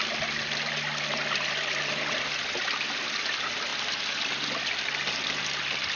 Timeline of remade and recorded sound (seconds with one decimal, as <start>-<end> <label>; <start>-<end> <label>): 0.0-6.0 recorded